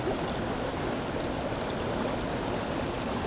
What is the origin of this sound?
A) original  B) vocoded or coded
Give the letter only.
A